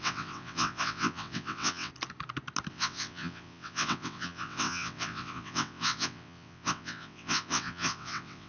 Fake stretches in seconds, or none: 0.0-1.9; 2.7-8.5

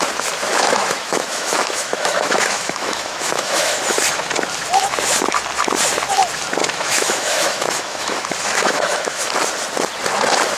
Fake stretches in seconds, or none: 0.5-3.8; 6.6-9.3

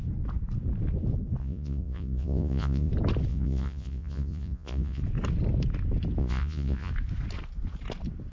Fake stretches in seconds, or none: 1.4-2.9; 3.3-5.0; 6.2-6.9

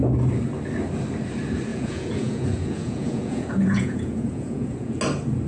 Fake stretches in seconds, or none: 1.7-5.0

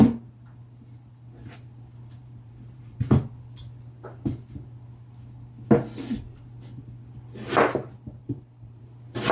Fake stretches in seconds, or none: 2.2-3.2; 8.2-8.8

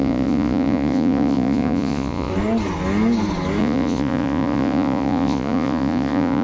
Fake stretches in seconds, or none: 0.0-2.3; 3.6-6.4

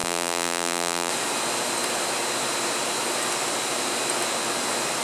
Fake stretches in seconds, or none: 0.0-1.1

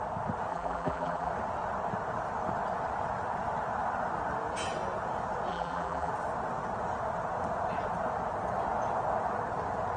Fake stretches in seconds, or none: 0.5-1.3; 5.5-6.1